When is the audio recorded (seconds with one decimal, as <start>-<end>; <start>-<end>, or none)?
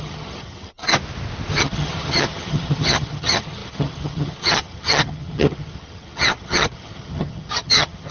0.8-1.6